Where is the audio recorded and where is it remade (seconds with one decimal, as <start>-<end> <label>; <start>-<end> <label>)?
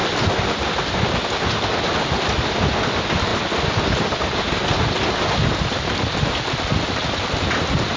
0.0-8.0 recorded